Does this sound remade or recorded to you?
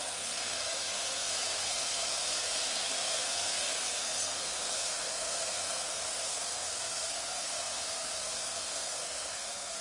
remade